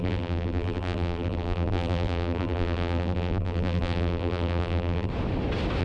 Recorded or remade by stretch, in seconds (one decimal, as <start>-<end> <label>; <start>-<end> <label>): 0.0-5.1 remade; 5.1-5.8 recorded